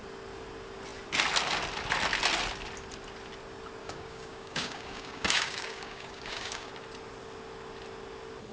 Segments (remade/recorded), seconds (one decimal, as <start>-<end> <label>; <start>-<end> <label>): 0.0-3.8 recorded; 3.8-6.7 remade; 6.7-8.5 recorded